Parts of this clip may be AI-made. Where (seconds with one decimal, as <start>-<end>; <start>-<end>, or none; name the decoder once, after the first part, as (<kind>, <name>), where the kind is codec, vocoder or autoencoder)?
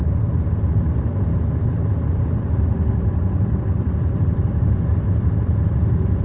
0.0-4.9 (vocoder, BigVGAN v2); 5.8-6.2